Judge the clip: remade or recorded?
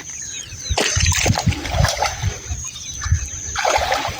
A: remade